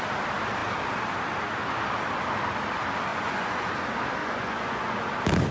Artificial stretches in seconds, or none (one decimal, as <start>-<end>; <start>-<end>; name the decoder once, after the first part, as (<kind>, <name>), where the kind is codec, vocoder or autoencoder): 3.1-3.7 (vocoder, Vocos); 4.2-5.0